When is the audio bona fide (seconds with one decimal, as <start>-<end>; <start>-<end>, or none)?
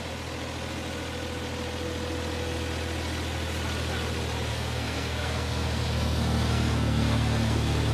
0.0-4.5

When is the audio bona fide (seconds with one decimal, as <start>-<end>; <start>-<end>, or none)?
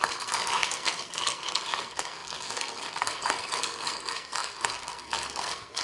none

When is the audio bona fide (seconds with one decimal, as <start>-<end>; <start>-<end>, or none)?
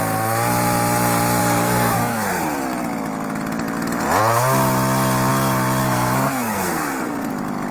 0.0-1.4; 2.4-5.8; 7.3-7.7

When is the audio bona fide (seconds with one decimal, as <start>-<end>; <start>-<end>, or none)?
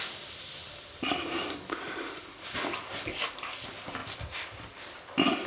0.0-5.5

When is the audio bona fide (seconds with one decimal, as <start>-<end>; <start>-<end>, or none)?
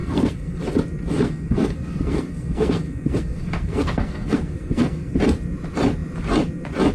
0.6-1.1; 5.2-6.9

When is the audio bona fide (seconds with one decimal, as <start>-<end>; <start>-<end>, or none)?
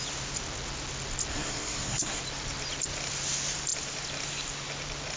0.0-1.3; 2.2-5.2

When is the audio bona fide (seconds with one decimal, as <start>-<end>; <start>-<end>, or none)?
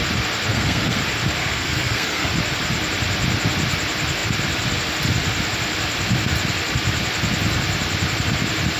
0.0-0.5; 1.0-1.4; 2.3-8.8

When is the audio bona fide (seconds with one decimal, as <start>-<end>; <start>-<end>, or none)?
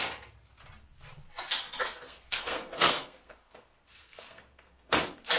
0.0-1.8; 5.0-5.4